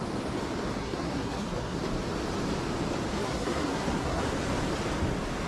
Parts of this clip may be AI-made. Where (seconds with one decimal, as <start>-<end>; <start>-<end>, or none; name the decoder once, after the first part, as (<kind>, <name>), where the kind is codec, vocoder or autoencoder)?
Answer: 0.8-1.8 (codec, SNAC); 3.1-4.2